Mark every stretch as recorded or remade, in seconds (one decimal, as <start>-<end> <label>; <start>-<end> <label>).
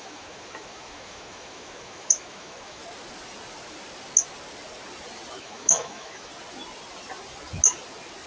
0.0-2.8 remade; 2.8-5.4 recorded; 5.4-6.3 remade; 6.3-8.3 recorded